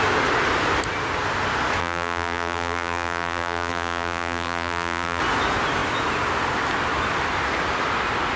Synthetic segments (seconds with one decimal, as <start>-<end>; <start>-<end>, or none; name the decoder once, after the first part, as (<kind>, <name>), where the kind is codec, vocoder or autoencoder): 1.8-5.2 (vocoder, BigVGAN v2)